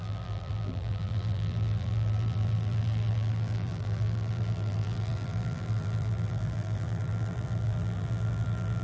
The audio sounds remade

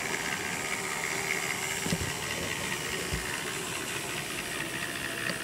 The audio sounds recorded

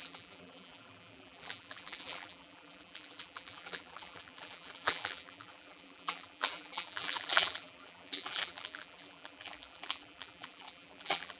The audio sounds remade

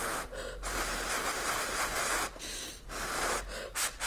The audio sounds recorded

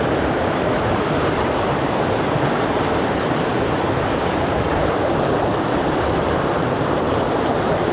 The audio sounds remade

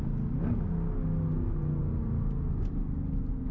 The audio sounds recorded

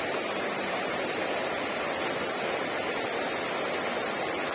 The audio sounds remade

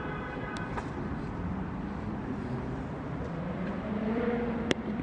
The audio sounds remade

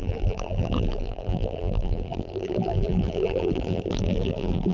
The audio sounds remade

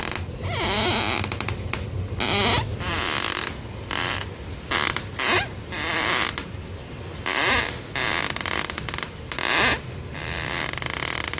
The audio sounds recorded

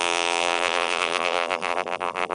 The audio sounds remade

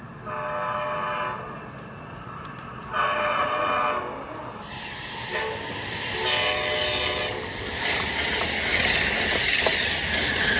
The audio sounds recorded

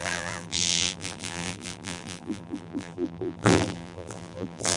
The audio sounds remade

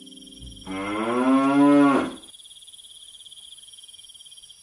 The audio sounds recorded